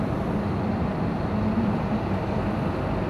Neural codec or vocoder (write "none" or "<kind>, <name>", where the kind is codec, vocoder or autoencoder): none